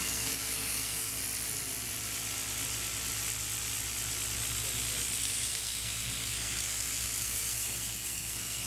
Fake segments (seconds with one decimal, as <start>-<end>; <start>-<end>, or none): 0.0-1.2; 5.2-8.7